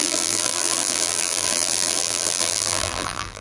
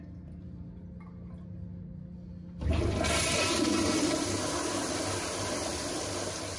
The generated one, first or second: first